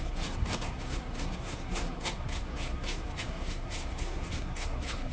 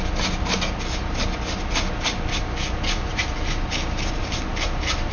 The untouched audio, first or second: second